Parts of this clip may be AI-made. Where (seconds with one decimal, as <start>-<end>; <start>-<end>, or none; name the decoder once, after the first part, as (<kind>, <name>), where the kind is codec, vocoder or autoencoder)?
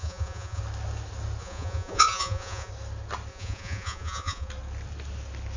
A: 0.0-0.6 (vocoder, Vocos); 1.4-2.7; 3.3-4.5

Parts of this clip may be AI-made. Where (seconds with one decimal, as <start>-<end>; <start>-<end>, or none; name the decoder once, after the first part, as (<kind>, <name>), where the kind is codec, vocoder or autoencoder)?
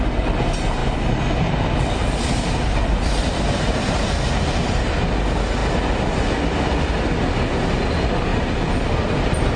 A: 0.8-4.3 (vocoder, BigVGAN v2); 8.3-9.2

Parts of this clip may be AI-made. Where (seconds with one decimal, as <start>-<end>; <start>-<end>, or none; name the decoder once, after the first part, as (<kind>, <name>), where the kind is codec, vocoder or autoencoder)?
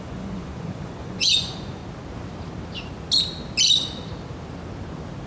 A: 0.0-1.8 (vocoder, Vocos)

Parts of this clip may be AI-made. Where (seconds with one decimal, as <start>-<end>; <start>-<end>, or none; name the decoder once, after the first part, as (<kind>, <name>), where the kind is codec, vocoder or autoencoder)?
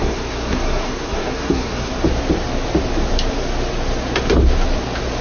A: 0.0-1.9 (codec, SNAC)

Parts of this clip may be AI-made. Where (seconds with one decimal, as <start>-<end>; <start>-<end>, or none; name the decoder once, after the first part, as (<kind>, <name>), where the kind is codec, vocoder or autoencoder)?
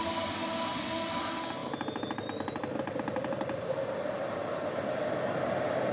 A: none